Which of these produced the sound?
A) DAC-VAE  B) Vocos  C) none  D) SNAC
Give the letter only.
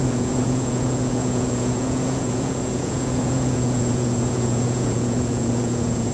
B